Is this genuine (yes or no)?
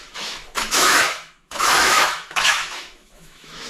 no